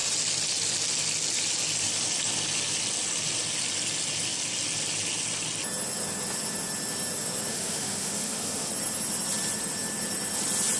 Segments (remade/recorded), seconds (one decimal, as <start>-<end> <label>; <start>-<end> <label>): 0.0-7.5 recorded; 7.5-8.7 remade; 8.7-10.8 recorded